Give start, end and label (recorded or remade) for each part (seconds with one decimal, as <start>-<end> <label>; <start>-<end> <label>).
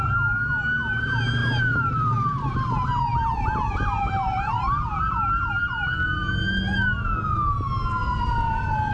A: 0.0-1.4 recorded; 1.4-5.5 remade; 5.5-8.0 recorded; 8.0-8.9 remade